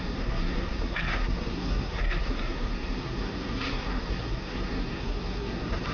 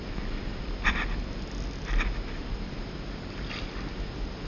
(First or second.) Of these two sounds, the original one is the second